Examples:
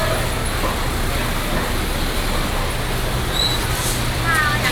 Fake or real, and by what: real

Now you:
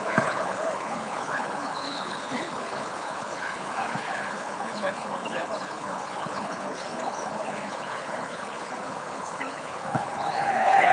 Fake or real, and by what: fake, codec, HILCodec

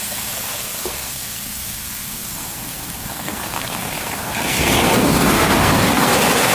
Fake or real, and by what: fake, codec, SNAC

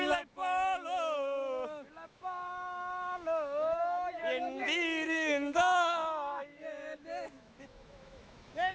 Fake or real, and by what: fake, autoencoder, DAC-VAE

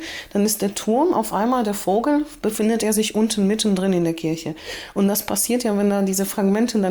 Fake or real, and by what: real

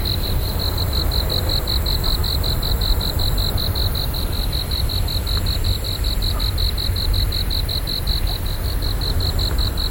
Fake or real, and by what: real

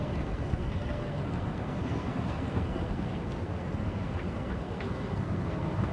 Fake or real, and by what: fake, codec, SNAC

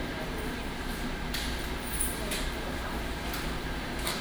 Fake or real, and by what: fake, vocoder, BigVGAN v2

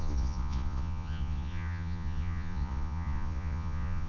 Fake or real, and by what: fake, vocoder, Vocos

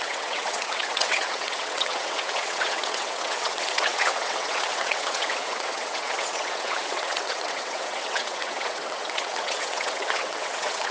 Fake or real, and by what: fake, vocoder, WaveNeXt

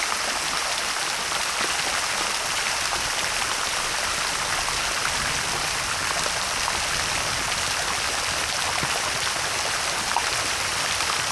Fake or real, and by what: real